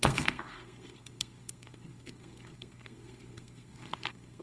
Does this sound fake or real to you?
fake